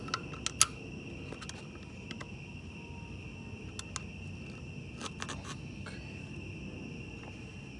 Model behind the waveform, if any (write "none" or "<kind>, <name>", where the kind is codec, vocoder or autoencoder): none